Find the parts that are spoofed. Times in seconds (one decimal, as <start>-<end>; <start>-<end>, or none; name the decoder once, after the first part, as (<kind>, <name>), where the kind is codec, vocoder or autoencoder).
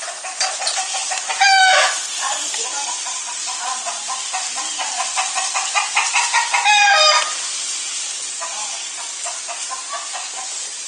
none